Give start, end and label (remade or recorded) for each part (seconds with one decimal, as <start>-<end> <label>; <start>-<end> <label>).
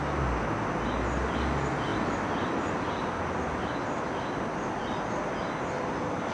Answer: 0.0-6.3 recorded